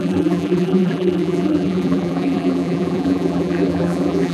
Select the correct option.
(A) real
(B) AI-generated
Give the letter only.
B